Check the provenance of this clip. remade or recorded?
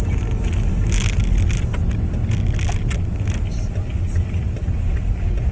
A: recorded